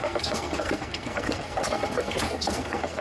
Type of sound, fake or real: fake